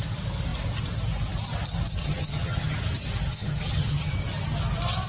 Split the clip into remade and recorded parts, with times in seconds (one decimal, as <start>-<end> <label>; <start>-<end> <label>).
0.0-2.0 recorded; 2.0-2.8 remade; 2.8-3.3 recorded; 3.3-4.1 remade; 4.1-5.1 recorded